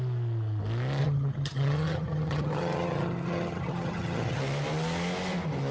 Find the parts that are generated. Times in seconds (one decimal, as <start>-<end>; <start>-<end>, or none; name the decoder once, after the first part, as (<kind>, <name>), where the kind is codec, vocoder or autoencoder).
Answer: 1.0-4.4 (vocoder, HiFi-GAN)